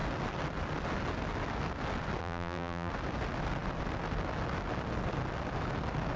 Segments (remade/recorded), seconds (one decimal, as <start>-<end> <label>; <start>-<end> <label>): 0.0-2.2 recorded; 2.2-2.9 remade; 2.9-6.2 recorded